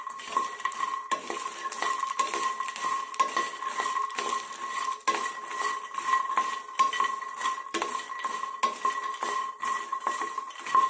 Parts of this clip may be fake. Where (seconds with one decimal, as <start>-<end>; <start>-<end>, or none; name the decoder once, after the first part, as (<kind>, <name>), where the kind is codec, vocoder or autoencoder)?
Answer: none